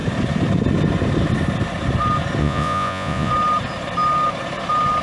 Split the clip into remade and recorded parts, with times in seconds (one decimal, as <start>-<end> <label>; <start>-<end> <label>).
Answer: 0.0-2.4 recorded; 2.4-3.3 remade; 3.3-5.0 recorded